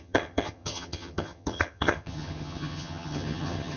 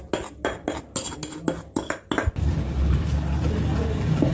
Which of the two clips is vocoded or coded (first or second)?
first